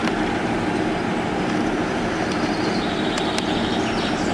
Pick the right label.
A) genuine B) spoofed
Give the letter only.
B